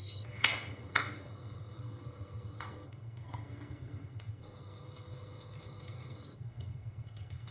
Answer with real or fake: fake